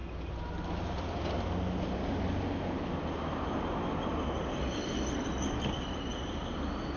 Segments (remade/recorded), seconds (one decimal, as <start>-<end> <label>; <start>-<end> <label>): 0.0-7.0 recorded

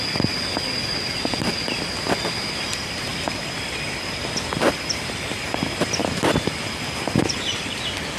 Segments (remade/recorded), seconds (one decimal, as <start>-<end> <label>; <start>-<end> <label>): 0.0-8.2 recorded

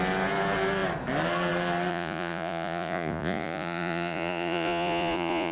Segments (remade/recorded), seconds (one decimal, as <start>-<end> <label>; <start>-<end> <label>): 0.0-1.9 recorded; 1.9-5.5 remade

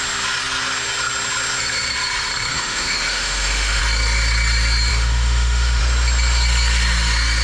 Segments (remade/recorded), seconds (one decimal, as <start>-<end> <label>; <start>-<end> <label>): 0.0-2.5 recorded; 2.5-3.8 remade; 3.8-4.9 recorded; 4.9-5.8 remade; 5.8-7.4 recorded

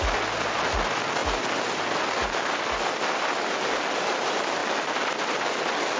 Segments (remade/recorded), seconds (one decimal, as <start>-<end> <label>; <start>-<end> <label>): 0.0-6.0 recorded

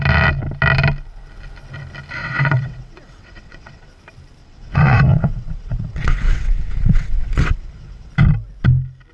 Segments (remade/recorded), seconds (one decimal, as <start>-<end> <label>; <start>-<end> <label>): 0.0-2.2 recorded; 2.2-3.9 remade; 3.9-4.4 recorded; 4.4-8.1 remade; 8.1-9.1 recorded